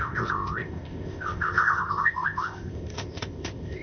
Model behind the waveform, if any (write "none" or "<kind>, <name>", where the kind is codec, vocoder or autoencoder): codec, ZipCodec